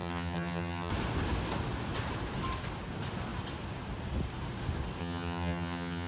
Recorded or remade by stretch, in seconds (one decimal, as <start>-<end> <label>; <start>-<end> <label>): 0.0-0.9 remade; 0.9-5.0 recorded; 5.0-6.1 remade